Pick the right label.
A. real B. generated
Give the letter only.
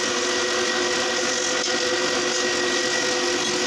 A